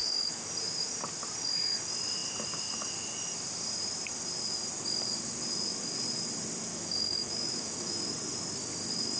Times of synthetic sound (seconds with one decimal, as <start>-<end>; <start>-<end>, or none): 0.0-0.5; 6.7-8.0